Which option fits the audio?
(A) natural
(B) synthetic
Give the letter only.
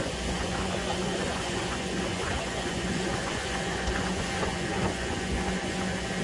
B